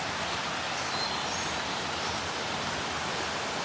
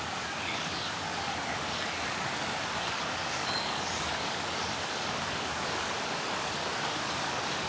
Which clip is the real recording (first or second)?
first